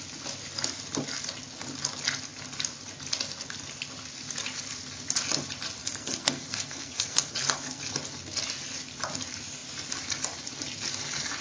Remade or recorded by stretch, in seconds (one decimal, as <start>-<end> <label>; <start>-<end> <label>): 0.0-5.8 recorded; 5.8-7.8 remade; 7.8-11.4 recorded